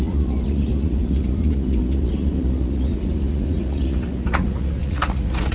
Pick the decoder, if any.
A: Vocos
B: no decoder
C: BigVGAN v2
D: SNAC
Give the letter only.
A